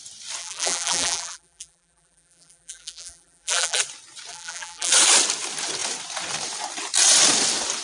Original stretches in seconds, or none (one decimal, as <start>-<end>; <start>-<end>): 0.0-0.4; 3.8-4.3; 4.9-7.8